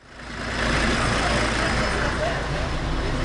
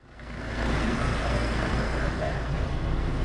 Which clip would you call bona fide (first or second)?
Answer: first